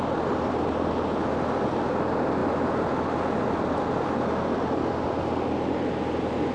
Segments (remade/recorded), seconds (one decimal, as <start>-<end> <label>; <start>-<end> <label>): 0.0-6.5 recorded